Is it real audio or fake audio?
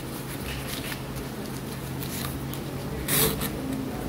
real